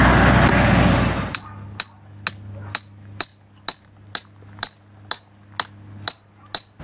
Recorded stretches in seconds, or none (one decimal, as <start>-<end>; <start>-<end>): 0.0-6.8